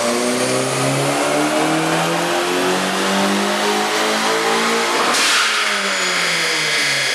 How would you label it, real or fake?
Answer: real